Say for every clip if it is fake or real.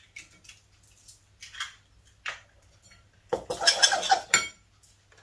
real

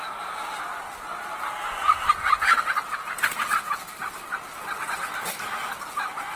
real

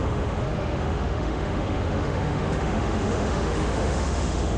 fake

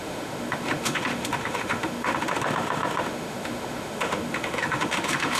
fake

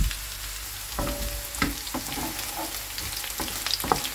real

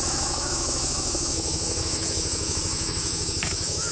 fake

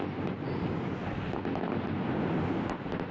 real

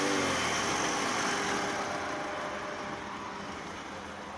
real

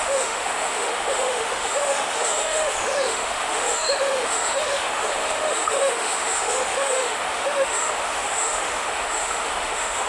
fake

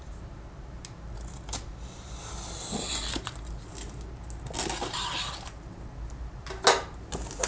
real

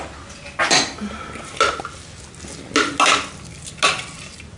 real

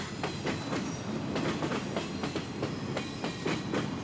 real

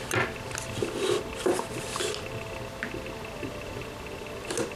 real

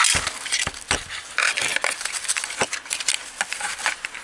real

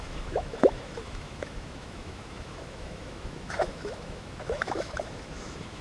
fake